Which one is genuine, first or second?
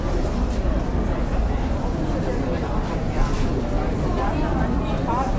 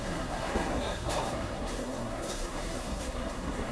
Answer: first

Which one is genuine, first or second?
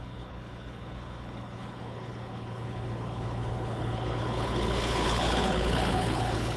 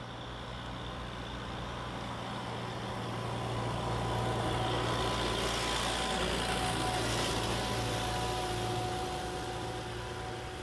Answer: second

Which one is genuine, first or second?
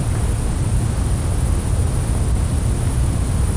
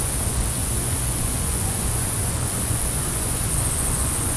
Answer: first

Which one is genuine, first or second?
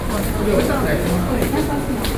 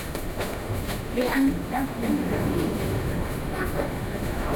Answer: first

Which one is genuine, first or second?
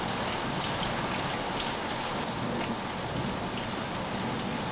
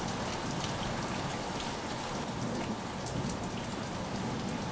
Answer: first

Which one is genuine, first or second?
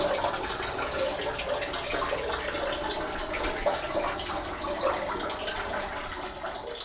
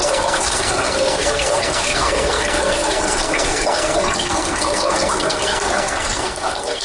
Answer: first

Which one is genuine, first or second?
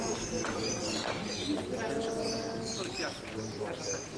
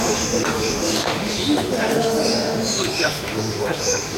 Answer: first